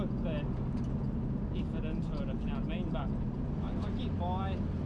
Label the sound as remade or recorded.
recorded